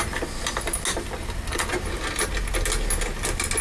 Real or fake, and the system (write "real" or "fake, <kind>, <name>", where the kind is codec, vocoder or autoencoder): real